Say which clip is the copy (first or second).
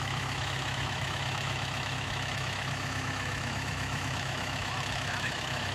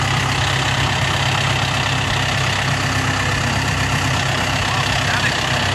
first